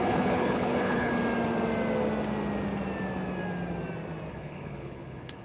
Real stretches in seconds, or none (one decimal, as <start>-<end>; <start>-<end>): 1.1-4.3